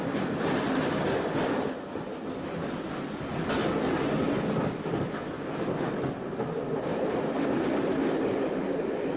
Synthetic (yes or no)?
no